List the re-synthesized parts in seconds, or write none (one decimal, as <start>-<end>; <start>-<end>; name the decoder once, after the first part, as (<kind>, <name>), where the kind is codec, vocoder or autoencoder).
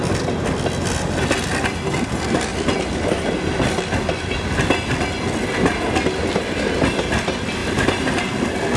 2.5-3.4 (vocoder, BigVGAN v2); 7.6-8.2